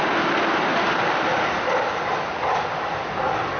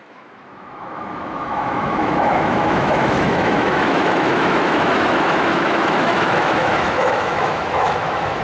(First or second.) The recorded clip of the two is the first